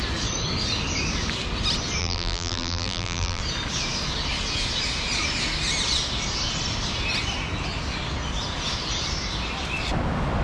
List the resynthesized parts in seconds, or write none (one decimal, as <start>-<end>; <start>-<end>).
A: 2.0-3.4